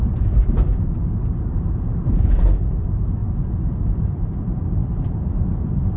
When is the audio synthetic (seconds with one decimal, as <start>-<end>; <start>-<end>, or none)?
0.0-0.7; 1.5-3.2; 4.0-4.8; 5.4-6.0